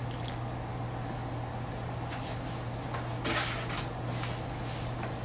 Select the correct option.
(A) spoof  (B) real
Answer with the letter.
B